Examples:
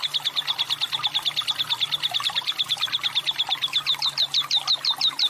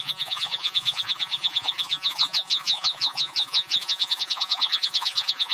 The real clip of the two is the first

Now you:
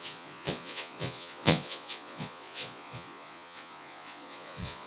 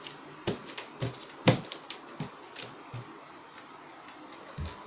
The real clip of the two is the second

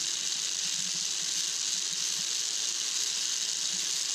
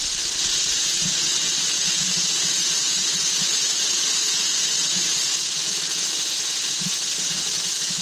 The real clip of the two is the first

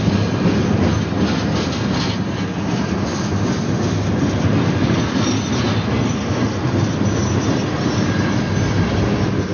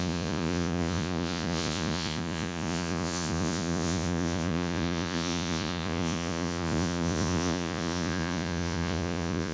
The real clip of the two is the first